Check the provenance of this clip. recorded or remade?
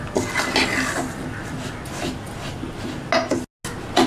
recorded